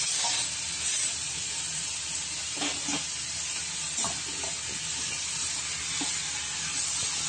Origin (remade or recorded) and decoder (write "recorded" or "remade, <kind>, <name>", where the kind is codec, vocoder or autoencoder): recorded